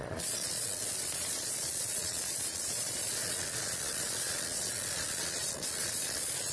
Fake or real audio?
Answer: fake